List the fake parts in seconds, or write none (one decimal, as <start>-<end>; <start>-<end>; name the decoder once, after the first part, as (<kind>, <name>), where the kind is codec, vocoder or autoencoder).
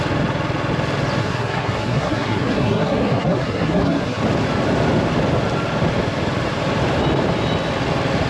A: 1.2-4.2 (codec, SNAC)